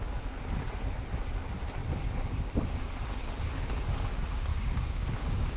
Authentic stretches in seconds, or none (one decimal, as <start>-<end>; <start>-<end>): 0.0-4.5